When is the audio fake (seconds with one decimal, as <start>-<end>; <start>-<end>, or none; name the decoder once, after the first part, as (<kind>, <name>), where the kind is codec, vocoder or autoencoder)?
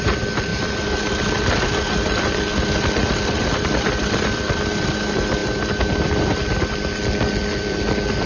none